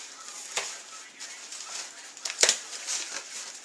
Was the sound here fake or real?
real